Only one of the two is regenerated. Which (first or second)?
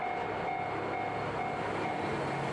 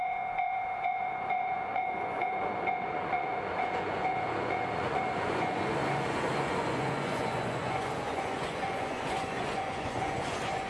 second